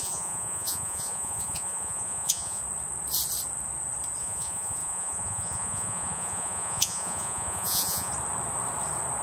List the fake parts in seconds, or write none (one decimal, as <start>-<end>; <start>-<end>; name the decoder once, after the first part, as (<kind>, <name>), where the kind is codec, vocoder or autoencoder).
0.0-2.6 (vocoder, Vocos); 4.2-8.1